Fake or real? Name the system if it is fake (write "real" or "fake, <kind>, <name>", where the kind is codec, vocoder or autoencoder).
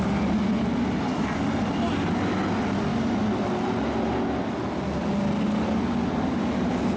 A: real